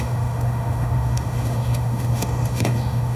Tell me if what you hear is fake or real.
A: fake